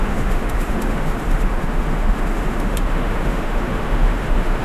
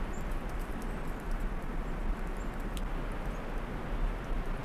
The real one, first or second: second